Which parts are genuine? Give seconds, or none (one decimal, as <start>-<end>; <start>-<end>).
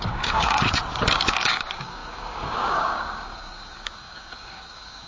0.8-1.5